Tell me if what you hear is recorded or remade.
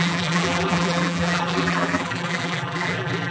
remade